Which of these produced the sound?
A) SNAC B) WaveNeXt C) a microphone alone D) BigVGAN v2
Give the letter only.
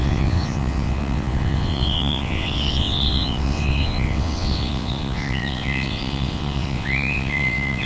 B